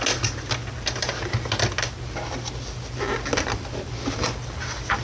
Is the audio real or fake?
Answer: real